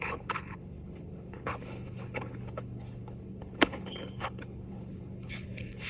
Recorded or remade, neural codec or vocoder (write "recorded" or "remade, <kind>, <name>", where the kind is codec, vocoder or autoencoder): remade, codec, HILCodec